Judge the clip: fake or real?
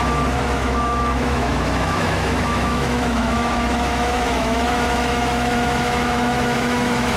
fake